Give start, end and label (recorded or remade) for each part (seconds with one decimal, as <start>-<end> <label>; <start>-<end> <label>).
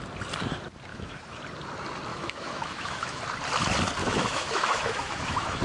0.0-0.9 recorded; 0.9-1.4 remade; 1.4-2.1 recorded; 2.1-3.2 remade; 3.2-4.0 recorded; 4.0-5.6 remade